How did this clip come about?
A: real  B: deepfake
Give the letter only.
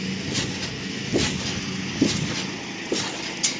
A